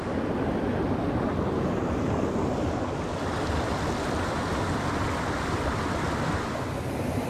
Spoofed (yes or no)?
no